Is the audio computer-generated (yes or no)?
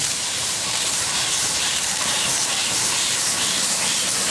yes